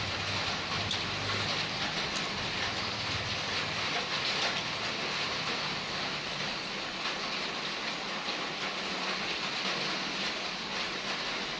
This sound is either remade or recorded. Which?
recorded